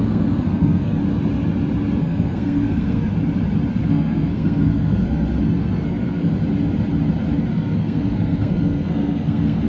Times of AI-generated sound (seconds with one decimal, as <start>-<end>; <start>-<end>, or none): 0.0-1.0; 2.0-3.1; 3.7-6.3; 7.5-9.7